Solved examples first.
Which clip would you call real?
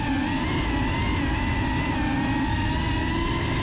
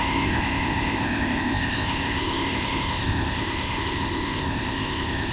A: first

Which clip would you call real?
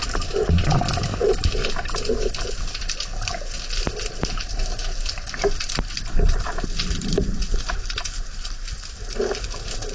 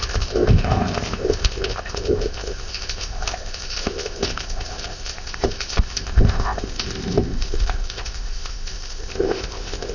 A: first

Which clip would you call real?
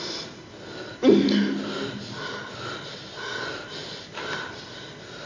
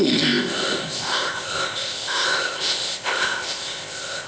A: first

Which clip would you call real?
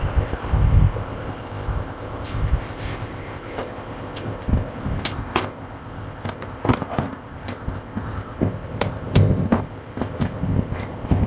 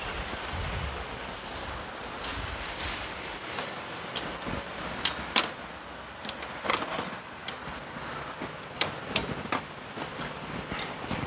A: second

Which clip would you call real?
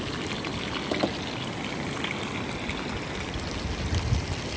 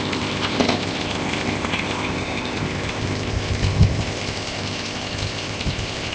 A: first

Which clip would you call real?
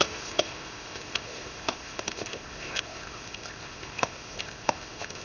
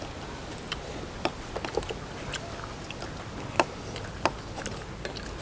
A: second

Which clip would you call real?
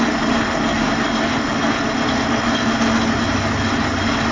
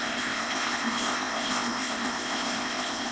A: first